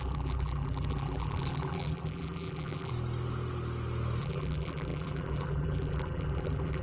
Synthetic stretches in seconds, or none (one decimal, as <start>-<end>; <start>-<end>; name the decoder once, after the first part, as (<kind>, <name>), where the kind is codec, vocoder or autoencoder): 0.0-2.9 (vocoder, BigVGAN v2); 4.2-6.8